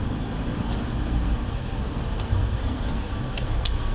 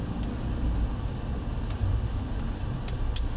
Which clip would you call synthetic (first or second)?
first